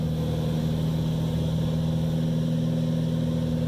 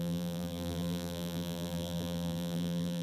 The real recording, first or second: first